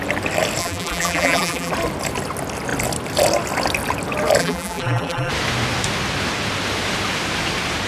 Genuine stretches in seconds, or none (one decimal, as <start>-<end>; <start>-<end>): 0.0-0.6; 1.7-4.4; 5.3-7.9